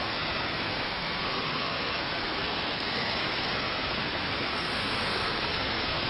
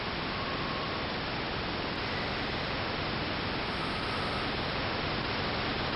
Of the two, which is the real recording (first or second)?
second